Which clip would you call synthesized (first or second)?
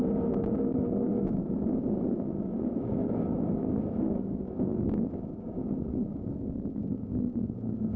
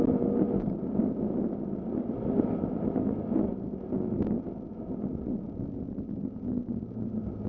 first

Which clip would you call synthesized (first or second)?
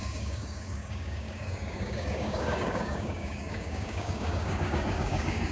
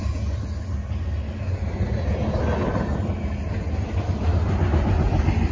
first